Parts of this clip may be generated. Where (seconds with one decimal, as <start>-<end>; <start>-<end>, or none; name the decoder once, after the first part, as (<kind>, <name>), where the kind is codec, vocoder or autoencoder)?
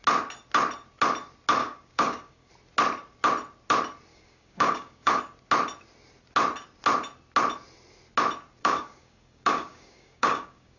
1.6-2.5 (codec, DAC); 4.1-5.2; 8.6-10.8